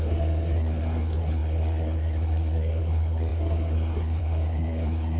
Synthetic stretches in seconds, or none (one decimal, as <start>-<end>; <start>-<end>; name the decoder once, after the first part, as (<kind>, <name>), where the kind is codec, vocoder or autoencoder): 0.0-5.2 (codec, SNAC)